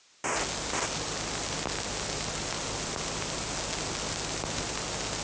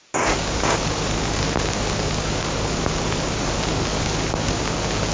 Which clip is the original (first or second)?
first